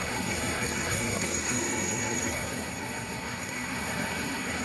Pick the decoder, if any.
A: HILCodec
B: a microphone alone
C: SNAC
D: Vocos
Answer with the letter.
C